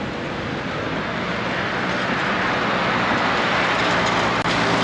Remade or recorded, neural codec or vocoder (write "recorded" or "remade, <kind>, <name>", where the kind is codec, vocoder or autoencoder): recorded